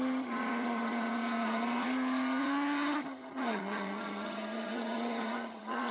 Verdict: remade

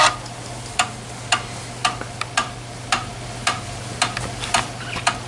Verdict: recorded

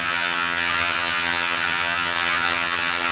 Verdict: remade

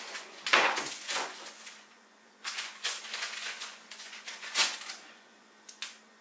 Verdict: remade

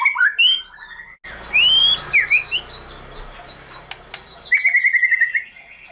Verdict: recorded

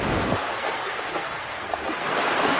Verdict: remade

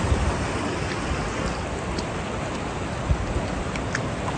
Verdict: recorded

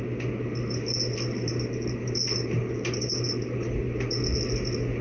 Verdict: recorded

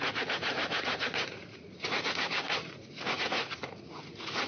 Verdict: remade